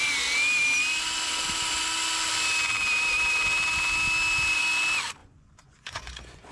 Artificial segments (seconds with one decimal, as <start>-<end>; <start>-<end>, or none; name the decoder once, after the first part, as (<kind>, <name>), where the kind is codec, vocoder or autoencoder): 5.2-6.5 (vocoder, Vocos)